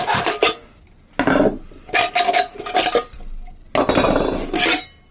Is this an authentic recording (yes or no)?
yes